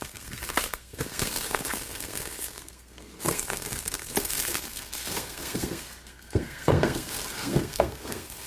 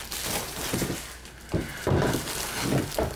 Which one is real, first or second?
second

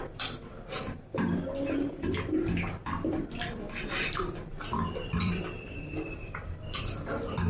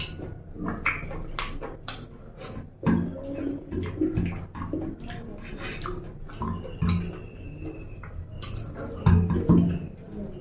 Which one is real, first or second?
second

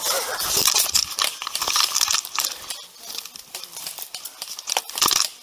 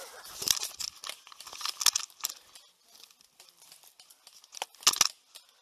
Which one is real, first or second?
second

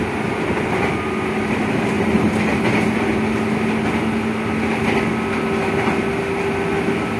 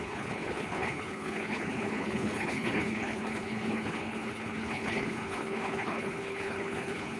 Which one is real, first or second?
first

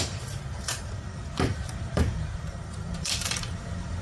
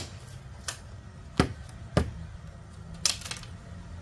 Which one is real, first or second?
second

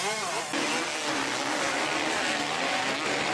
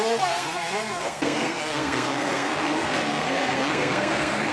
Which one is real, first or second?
first